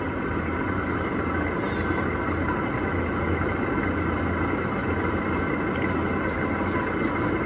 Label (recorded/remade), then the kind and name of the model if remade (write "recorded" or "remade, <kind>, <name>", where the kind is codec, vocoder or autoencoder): recorded